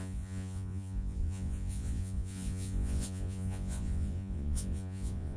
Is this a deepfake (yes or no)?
yes